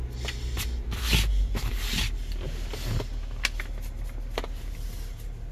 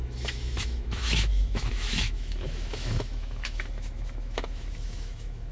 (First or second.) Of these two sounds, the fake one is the second